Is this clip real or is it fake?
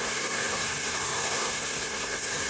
fake